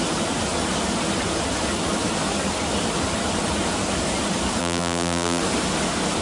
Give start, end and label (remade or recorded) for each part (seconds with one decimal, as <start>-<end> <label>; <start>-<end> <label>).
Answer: 0.0-4.6 recorded; 4.6-5.4 remade; 5.4-6.2 recorded